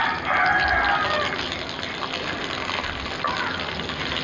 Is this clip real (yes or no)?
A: yes